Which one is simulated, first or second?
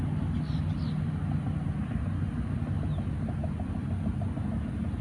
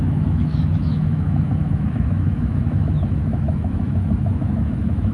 second